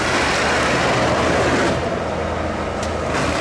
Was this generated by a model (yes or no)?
no